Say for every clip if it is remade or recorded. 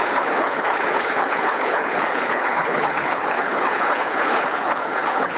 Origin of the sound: remade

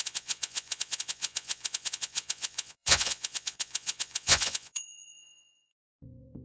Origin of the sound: remade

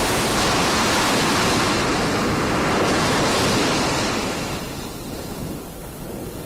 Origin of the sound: recorded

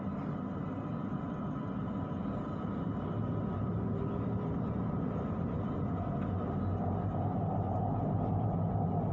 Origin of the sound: recorded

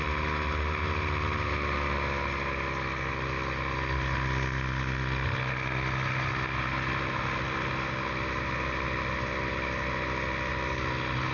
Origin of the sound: recorded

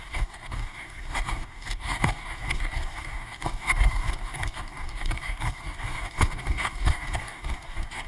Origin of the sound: remade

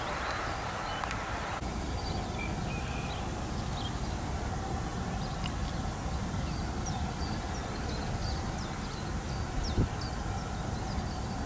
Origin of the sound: recorded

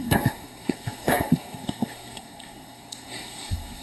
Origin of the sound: remade